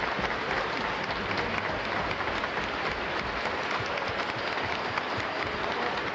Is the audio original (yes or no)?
yes